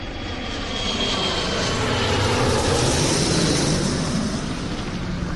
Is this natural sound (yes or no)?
yes